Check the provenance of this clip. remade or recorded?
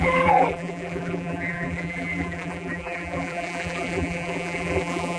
remade